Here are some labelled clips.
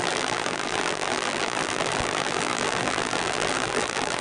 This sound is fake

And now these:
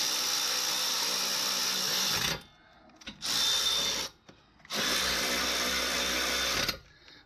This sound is real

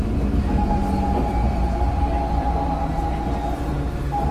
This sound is real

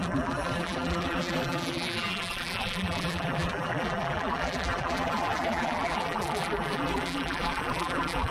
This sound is fake